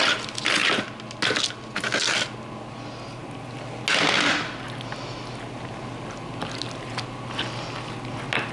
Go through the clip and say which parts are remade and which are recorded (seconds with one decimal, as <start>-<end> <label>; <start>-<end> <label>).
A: 0.0-8.5 recorded